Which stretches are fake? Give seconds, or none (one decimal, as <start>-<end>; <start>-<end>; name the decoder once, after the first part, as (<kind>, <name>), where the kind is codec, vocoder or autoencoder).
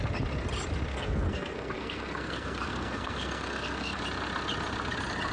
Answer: 0.9-4.0 (codec, SNAC)